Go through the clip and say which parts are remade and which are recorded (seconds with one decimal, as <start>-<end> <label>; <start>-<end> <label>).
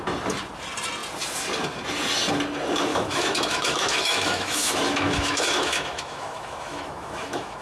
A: 0.0-2.9 recorded; 2.9-7.6 remade